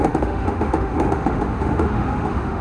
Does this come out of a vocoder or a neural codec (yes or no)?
yes